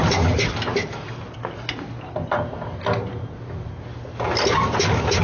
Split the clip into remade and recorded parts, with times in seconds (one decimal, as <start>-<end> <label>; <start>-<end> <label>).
0.0-5.2 recorded